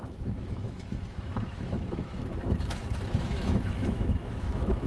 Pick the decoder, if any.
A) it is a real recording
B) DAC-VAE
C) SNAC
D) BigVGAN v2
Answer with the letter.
B